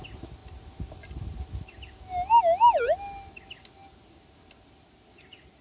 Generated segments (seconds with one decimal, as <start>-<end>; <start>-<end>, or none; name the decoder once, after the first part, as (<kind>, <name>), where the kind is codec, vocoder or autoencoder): none